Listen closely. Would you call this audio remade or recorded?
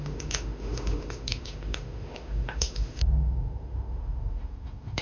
remade